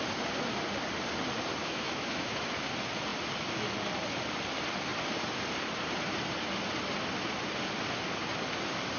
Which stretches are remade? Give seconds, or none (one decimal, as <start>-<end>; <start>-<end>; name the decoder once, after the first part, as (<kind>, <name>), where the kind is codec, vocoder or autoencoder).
1.6-2.4 (autoencoder, DAC-VAE)